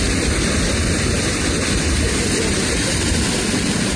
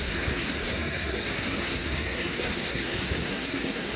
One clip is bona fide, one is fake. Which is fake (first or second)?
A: second